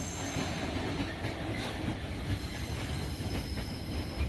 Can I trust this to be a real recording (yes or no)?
yes